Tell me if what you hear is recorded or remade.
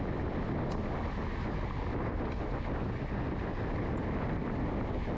recorded